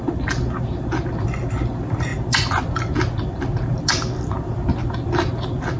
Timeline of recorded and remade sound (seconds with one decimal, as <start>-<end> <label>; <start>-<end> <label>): 0.0-5.8 recorded